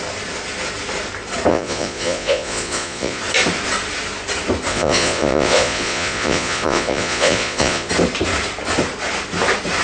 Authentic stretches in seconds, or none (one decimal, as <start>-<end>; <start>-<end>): 0.0-1.5; 3.2-4.7; 7.9-9.8